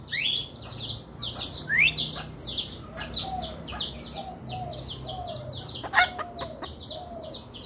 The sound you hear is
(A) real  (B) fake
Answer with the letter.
A